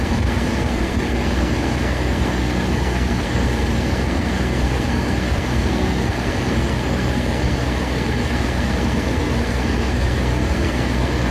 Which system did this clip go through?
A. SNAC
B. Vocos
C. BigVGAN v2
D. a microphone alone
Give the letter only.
A